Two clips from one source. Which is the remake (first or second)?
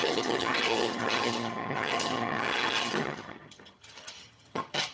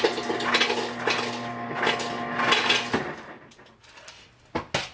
first